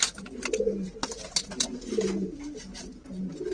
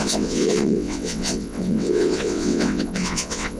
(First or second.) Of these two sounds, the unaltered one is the first